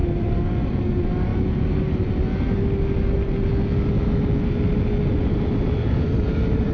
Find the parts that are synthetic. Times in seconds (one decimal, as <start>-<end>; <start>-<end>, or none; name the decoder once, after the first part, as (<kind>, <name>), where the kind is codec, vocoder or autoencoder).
0.0-1.3 (vocoder, BigVGAN v2); 5.3-6.7